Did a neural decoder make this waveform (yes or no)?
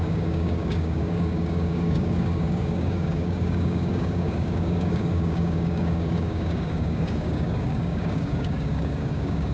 yes